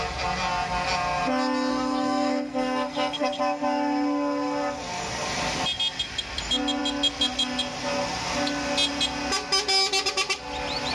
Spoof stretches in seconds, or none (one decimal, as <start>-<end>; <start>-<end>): 1.7-3.4